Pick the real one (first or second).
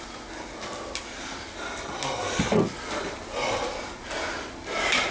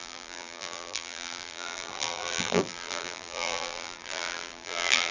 first